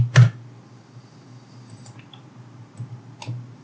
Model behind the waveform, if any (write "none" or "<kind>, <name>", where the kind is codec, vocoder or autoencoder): none